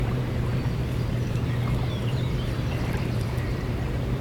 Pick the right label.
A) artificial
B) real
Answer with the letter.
A